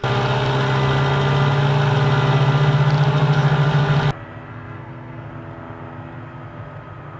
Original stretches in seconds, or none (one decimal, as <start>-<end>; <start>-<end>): 0.0-4.5; 5.3-7.2